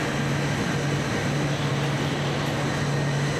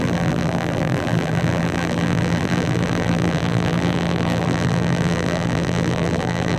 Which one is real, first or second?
first